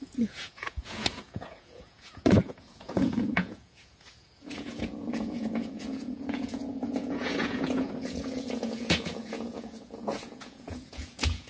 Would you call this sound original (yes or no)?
no